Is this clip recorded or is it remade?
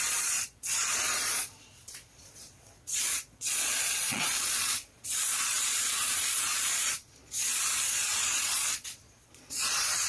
remade